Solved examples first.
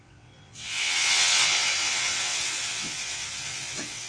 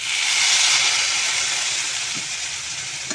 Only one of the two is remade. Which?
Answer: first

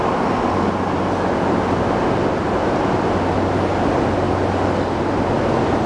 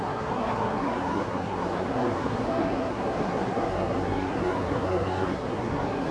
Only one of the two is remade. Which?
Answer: second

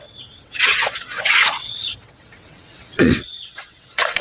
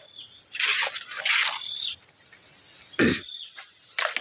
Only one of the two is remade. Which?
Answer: first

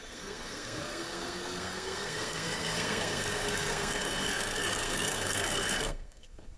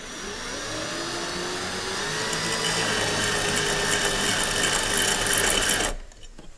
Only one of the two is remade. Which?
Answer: first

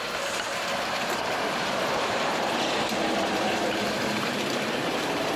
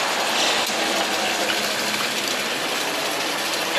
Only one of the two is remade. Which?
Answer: first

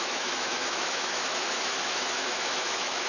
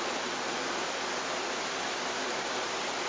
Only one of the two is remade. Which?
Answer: first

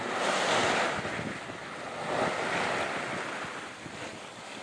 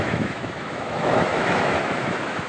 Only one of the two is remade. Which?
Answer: second